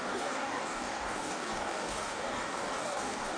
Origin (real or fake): fake